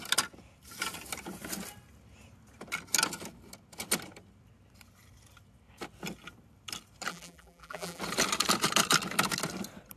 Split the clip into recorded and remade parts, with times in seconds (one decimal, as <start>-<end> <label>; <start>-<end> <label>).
0.0-7.1 recorded; 7.1-8.0 remade; 8.0-10.0 recorded